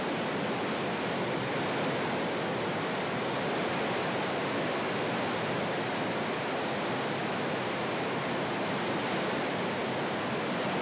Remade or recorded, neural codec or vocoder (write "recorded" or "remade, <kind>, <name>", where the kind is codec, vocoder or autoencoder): recorded